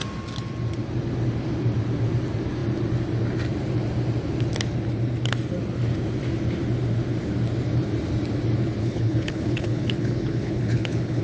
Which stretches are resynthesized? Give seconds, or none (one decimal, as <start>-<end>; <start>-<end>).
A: 8.8-11.2